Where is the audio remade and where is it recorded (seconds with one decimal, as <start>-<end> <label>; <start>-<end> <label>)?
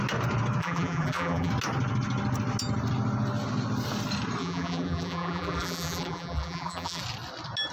0.0-0.6 recorded; 0.6-1.5 remade; 1.5-4.4 recorded; 4.4-7.0 remade; 7.0-7.7 recorded